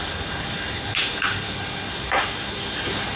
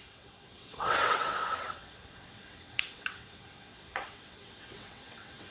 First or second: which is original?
first